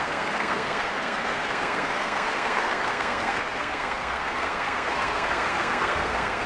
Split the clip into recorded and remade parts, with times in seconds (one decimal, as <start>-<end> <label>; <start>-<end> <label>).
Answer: 0.0-6.5 remade